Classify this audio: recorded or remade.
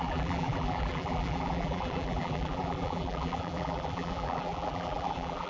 remade